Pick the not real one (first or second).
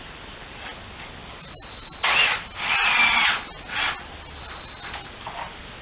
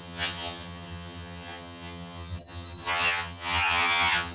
second